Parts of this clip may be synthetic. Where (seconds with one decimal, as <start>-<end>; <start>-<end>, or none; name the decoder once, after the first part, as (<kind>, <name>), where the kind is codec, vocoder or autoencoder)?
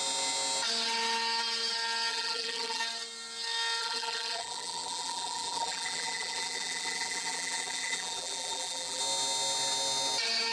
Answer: 2.1-2.8 (vocoder, BigVGAN v2); 3.8-9.0